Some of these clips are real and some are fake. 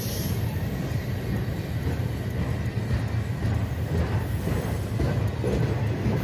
real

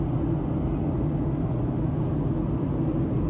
real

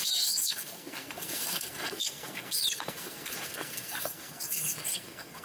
fake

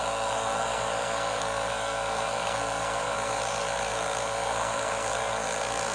fake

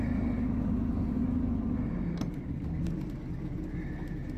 real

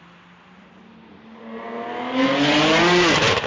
real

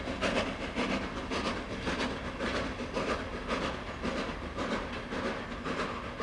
real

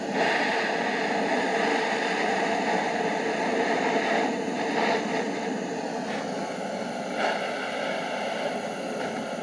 real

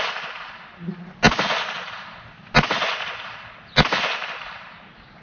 real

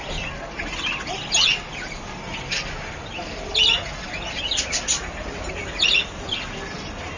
real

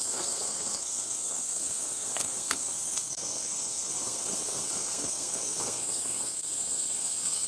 fake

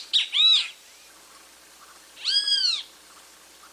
real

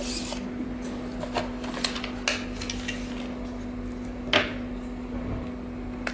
real